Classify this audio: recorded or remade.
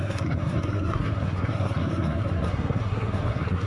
remade